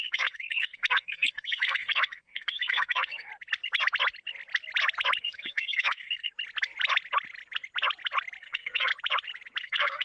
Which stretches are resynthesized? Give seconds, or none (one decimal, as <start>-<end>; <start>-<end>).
0.0-3.3; 5.2-6.3; 8.4-8.9; 9.6-10.0